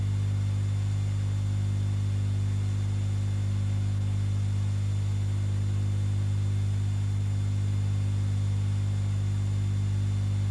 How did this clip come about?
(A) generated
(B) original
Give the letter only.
B